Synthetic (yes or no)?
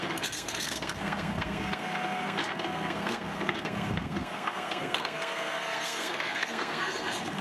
yes